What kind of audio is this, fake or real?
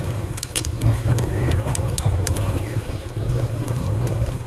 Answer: fake